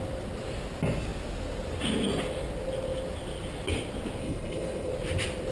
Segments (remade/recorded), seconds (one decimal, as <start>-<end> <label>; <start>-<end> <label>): 0.0-4.2 recorded; 4.2-4.9 remade; 4.9-5.5 recorded